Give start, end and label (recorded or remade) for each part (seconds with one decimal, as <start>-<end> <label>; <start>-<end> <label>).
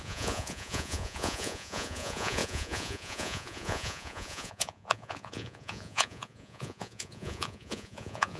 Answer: 0.0-8.4 remade